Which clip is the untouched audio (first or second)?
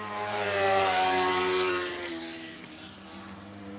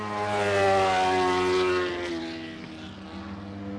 second